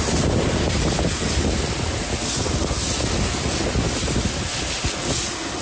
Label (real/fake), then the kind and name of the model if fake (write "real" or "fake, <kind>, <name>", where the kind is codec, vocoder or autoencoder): real